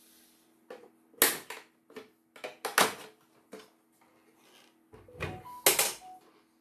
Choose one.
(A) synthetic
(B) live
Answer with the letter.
B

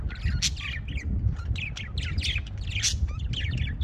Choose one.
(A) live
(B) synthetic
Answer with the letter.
A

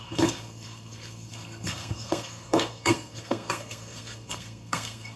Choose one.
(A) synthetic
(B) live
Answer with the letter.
A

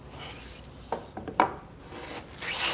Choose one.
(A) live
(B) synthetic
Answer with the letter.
A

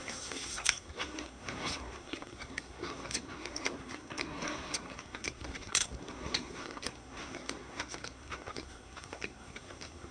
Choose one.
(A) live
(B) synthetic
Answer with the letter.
B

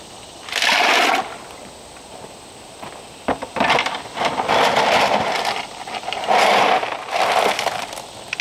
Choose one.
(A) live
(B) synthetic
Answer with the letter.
A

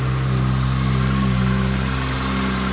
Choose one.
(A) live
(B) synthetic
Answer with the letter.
A